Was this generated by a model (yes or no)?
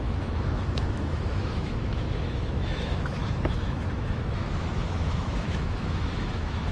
yes